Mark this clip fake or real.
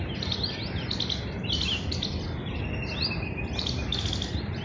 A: real